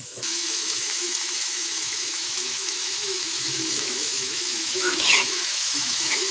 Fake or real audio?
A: fake